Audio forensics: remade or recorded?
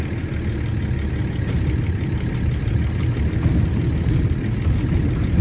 recorded